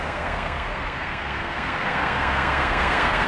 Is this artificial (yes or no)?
yes